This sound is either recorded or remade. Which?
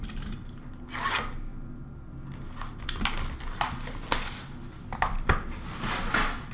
recorded